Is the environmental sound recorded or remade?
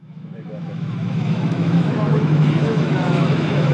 remade